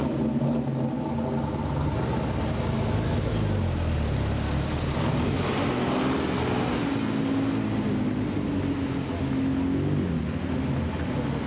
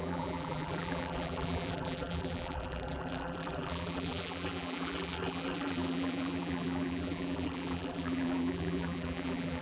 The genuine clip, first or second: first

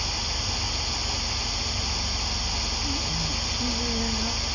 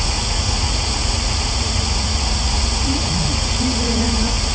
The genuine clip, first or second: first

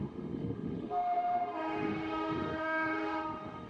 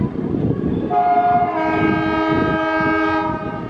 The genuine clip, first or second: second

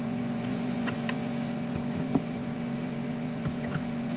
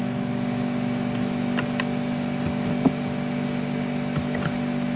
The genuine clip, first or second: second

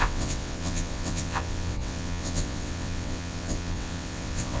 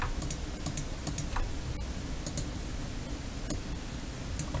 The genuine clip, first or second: second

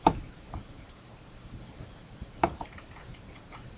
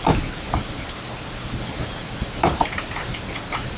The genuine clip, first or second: second